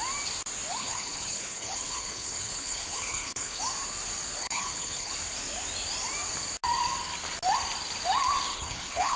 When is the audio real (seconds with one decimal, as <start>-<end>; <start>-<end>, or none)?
0.0-0.8; 3.6-4.4; 5.1-8.5